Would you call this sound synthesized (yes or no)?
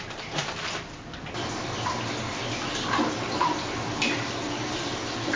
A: no